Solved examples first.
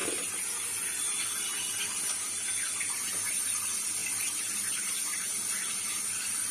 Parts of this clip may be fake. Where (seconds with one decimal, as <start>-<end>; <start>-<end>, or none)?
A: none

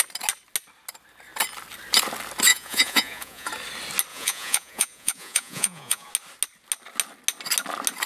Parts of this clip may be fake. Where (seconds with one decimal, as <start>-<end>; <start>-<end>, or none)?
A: 2.5-3.5; 4.1-6.1

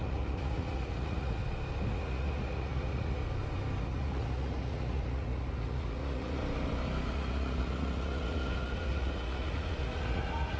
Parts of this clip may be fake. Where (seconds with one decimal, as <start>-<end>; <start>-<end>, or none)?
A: 0.0-1.4; 1.9-3.2; 3.8-6.4; 7.1-10.6

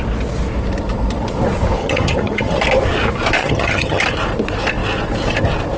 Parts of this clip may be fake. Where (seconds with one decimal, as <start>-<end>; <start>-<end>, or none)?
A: 1.8-2.6; 3.4-4.0